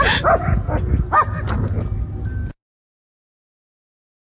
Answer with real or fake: real